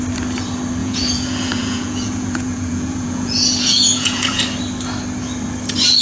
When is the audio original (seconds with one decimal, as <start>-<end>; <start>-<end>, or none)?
0.0-0.8; 4.4-6.0